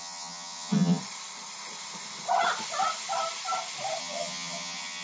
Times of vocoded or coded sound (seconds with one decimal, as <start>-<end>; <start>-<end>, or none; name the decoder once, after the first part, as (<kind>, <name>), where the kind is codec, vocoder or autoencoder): 0.0-1.0 (vocoder, HiFi-GAN); 4.0-5.0